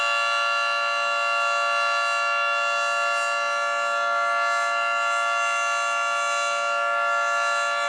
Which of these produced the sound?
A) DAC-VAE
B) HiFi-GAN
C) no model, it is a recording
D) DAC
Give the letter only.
C